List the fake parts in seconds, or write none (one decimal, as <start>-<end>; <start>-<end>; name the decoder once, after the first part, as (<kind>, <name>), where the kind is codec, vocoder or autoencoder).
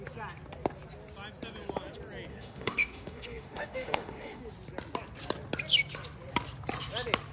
2.3-4.4 (autoencoder, DAC-VAE)